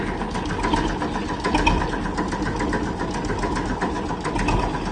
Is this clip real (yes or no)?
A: yes